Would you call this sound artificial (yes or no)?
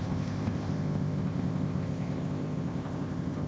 yes